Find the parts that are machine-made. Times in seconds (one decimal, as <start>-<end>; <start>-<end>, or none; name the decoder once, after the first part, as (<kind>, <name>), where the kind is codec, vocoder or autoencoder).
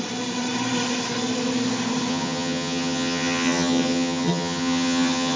2.1-5.4 (vocoder, HiFi-GAN)